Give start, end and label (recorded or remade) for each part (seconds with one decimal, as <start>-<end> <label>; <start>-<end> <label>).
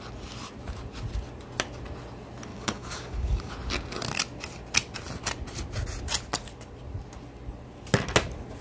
0.0-2.5 recorded; 2.5-3.5 remade; 3.5-8.6 recorded